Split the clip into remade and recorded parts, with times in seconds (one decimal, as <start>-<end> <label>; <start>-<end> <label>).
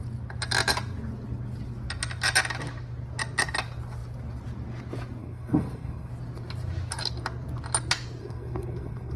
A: 0.0-5.2 recorded; 5.2-6.1 remade; 6.1-8.2 recorded; 8.2-9.2 remade